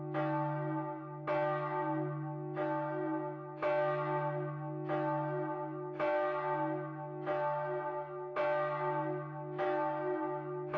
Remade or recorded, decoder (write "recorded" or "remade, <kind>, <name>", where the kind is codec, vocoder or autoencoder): recorded